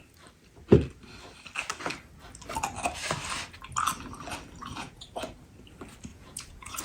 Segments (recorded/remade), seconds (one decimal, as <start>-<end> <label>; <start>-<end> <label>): 0.0-4.6 recorded; 4.6-5.2 remade; 5.2-6.1 recorded; 6.1-6.8 remade